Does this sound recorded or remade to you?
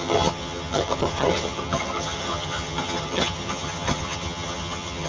remade